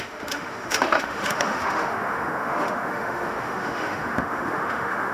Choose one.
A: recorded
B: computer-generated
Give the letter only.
B